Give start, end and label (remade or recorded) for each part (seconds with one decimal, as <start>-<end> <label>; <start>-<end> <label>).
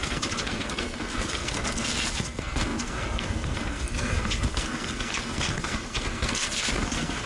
0.0-7.3 remade